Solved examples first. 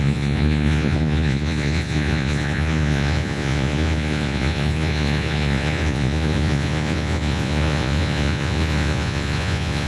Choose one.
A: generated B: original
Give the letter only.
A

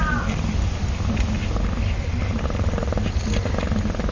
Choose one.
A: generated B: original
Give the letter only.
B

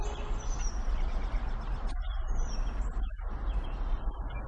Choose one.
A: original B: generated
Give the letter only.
A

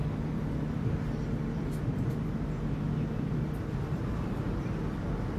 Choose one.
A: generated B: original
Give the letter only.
B